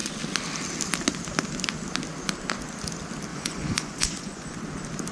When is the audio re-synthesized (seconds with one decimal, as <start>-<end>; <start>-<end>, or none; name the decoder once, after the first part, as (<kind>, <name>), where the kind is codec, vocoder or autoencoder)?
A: 3.3-4.6 (vocoder, Vocos)